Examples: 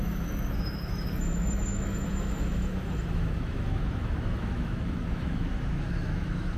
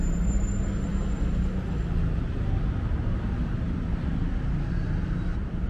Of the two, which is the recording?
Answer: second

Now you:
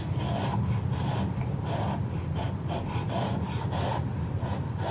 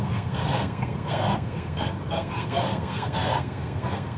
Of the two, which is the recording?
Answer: first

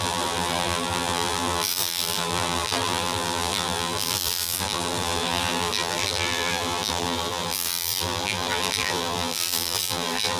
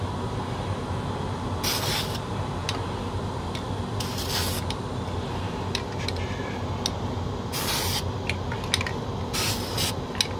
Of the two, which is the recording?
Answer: second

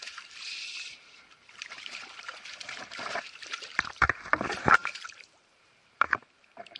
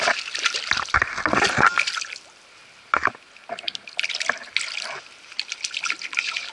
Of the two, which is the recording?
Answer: second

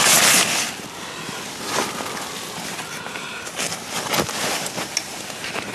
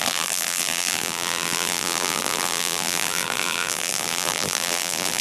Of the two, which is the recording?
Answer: first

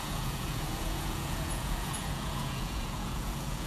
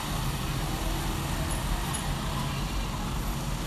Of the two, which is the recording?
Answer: second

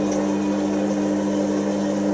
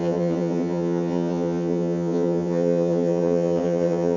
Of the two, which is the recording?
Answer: first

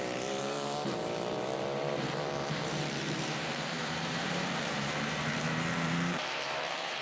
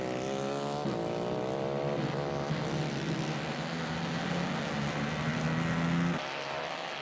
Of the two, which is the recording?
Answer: second